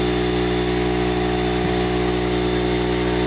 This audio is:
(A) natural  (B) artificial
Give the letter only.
A